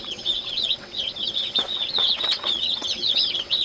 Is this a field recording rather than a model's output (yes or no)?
no